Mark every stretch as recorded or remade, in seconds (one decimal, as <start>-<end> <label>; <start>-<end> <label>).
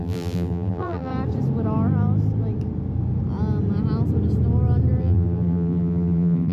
0.0-1.1 remade; 1.1-5.0 recorded; 5.0-6.5 remade